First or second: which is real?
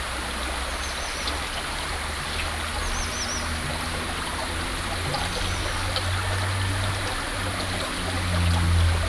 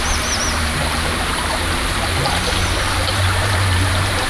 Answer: first